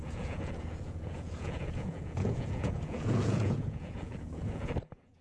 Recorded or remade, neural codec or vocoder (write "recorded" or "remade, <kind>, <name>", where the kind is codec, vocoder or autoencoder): remade, vocoder, Vocos